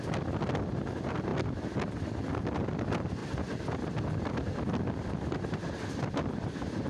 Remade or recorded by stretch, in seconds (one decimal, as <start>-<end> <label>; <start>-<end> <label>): 0.0-6.9 remade